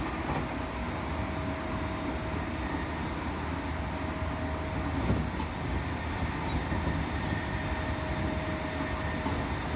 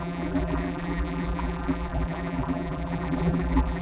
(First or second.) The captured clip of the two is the first